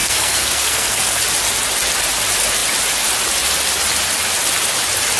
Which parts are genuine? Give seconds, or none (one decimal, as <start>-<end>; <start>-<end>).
1.2-5.2